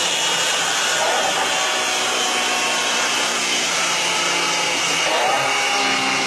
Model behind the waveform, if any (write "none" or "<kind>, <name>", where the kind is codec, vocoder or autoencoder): none